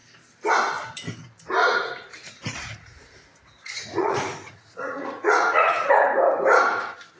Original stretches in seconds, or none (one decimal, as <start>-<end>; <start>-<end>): 0.0-1.6; 5.9-7.2